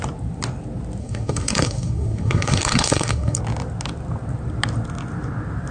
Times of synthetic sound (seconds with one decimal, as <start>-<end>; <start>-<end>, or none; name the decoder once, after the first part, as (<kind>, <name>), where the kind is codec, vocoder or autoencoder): 1.0-3.4 (codec, SNAC)